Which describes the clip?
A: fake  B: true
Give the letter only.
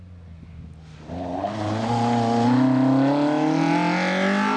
B